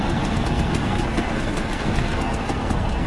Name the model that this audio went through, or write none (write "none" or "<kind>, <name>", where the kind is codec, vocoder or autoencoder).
codec, SNAC